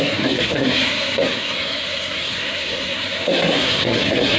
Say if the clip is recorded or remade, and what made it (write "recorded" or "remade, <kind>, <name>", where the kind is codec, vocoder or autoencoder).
remade, codec, SNAC